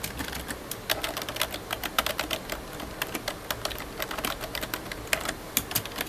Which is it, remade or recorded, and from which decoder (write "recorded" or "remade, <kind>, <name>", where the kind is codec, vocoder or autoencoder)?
recorded